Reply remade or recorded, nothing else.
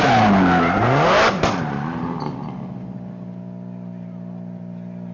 recorded